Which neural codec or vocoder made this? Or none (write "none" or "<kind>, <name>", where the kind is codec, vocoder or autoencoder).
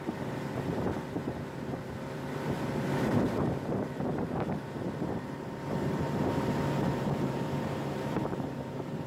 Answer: vocoder, BigVGAN v2